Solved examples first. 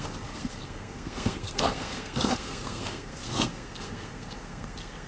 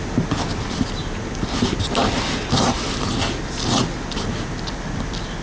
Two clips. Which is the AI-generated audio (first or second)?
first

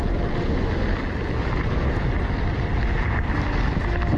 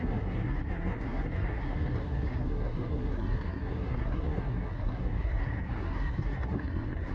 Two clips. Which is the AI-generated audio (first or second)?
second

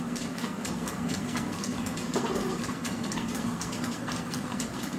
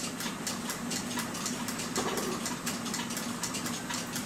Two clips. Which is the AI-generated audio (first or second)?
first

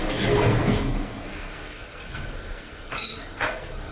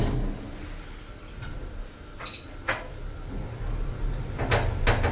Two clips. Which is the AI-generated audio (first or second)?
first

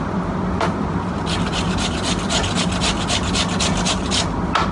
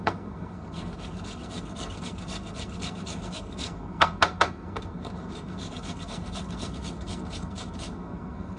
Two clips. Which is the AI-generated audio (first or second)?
second